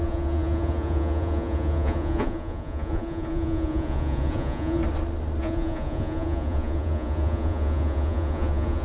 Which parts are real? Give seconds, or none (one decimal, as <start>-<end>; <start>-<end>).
4.8-5.4